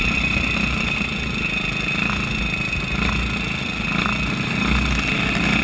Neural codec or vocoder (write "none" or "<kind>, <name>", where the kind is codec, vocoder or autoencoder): none